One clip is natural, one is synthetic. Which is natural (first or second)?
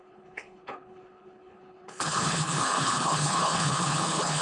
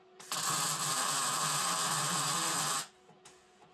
second